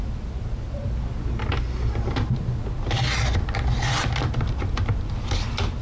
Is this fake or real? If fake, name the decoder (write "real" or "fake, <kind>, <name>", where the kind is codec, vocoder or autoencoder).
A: real